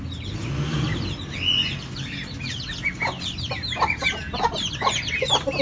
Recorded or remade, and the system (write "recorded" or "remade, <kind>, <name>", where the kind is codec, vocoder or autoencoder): recorded